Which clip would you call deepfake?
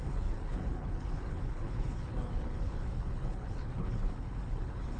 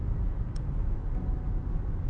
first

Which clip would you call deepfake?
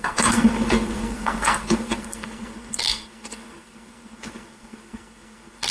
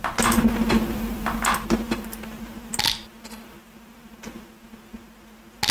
first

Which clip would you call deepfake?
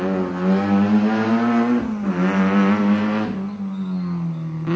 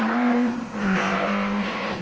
second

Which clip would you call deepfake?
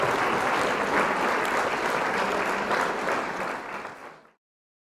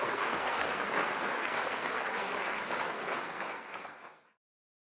second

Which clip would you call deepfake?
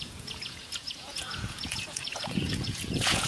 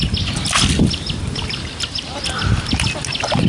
first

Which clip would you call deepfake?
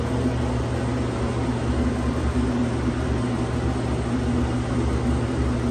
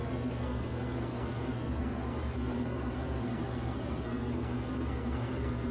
second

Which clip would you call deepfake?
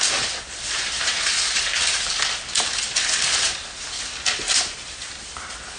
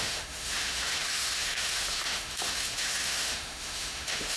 second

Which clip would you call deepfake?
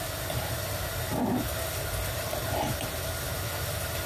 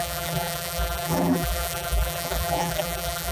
second